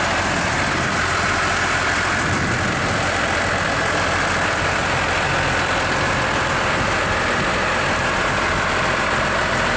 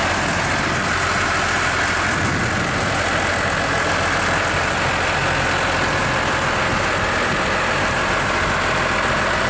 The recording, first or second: second